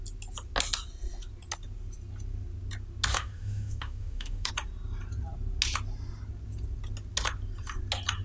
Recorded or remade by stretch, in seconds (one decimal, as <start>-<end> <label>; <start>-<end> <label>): 0.0-3.1 recorded; 3.1-4.5 remade; 4.5-8.2 recorded